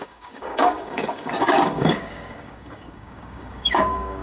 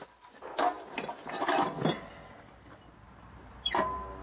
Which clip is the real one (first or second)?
second